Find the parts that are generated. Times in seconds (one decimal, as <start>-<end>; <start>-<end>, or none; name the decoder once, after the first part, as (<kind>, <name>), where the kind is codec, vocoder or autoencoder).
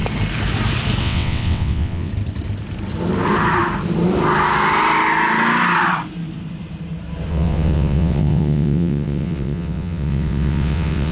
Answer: 1.0-2.1 (vocoder, WaveNeXt); 7.3-11.1